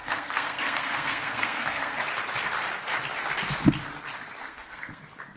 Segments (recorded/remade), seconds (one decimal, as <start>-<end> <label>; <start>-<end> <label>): 0.0-2.0 remade; 2.0-4.4 recorded; 4.4-5.0 remade; 5.0-5.4 recorded